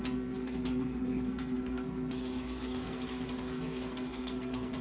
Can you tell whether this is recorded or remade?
remade